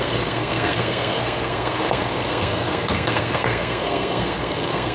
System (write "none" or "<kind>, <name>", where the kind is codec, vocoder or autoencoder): codec, SNAC